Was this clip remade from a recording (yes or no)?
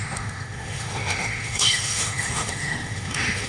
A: yes